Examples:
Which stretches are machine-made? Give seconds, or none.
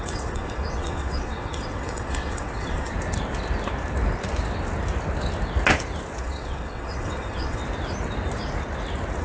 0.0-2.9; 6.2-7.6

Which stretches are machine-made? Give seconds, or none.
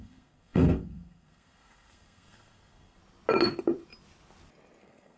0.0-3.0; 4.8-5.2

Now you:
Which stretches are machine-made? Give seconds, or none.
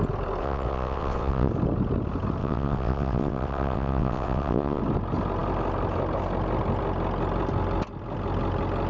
0.4-1.5; 2.4-4.8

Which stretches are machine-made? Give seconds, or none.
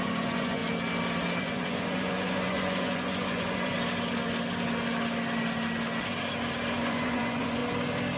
0.0-0.6; 1.4-3.7; 6.8-7.6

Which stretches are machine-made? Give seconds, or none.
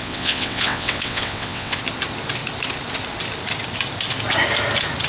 0.0-1.8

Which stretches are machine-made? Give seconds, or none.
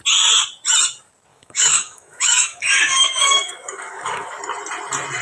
1.3-4.4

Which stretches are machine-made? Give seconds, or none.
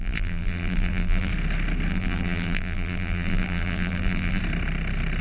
0.0-1.3; 1.9-4.4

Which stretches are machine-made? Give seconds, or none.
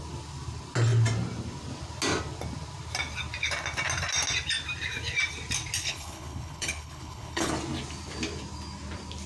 5.8-7.5